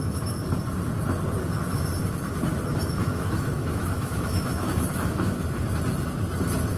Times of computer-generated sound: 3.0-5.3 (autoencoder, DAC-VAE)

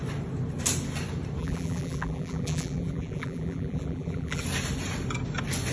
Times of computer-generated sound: 1.4-4.4 (vocoder, BigVGAN v2)

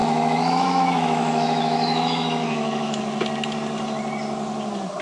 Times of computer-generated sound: 0.0-3.0 (autoencoder, DAC-VAE)

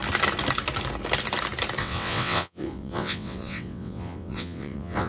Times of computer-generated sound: 1.8-5.1 (vocoder, WaveNeXt)

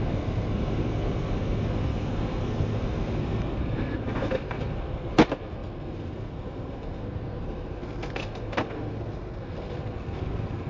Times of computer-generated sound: 0.0-10.7 (codec, SNAC)

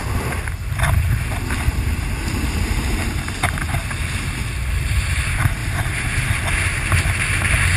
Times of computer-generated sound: none